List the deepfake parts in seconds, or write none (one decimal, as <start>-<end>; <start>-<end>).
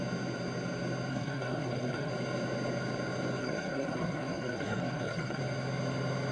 1.1-2.1; 3.4-5.4